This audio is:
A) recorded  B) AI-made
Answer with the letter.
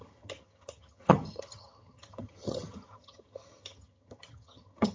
B